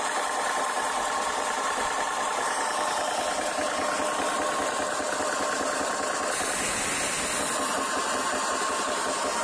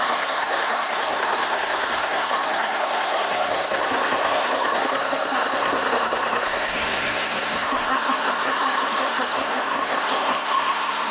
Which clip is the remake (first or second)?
second